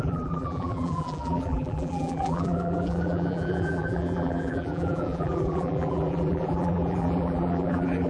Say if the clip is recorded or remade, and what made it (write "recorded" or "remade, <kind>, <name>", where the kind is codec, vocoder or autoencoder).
remade, vocoder, BigVGAN v2